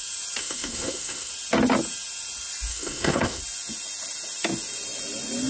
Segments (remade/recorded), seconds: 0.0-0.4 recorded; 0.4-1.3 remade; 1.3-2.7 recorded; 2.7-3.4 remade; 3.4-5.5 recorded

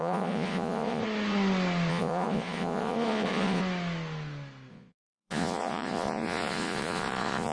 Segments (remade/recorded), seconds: 0.0-1.0 remade; 1.0-1.9 recorded; 1.9-3.6 remade; 3.6-4.7 recorded; 4.7-7.5 remade